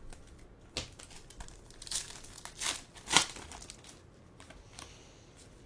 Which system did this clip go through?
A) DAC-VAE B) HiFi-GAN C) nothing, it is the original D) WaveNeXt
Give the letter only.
C